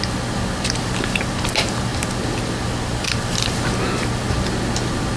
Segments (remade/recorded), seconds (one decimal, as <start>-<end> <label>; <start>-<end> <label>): 0.0-5.2 recorded